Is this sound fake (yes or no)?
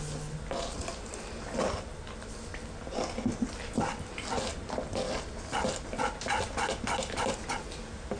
no